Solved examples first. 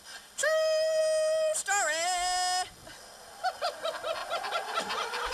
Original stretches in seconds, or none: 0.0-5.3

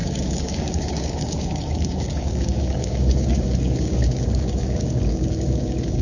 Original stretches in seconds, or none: none

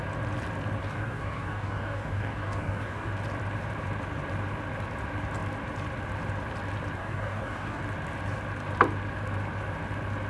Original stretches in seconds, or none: 0.0-0.8; 3.1-7.0; 7.8-10.3